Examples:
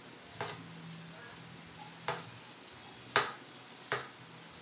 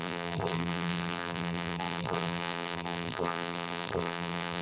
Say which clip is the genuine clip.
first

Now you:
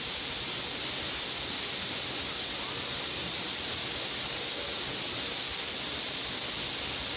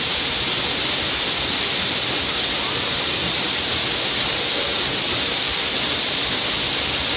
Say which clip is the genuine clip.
first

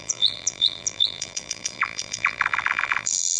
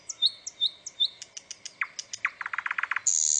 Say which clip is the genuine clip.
second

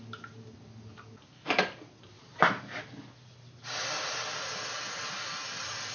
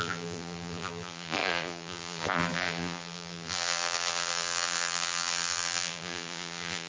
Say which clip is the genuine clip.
first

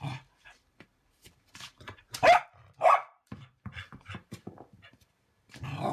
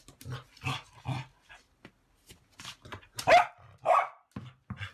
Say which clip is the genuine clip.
second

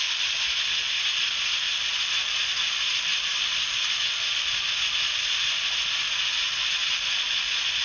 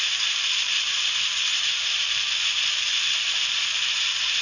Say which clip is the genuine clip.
first